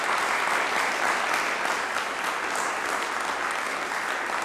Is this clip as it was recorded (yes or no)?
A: yes